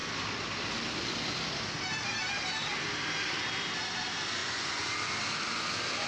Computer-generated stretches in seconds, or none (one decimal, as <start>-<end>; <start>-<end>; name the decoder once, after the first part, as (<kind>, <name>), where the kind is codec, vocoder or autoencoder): 4.4-4.9 (vocoder, Vocos)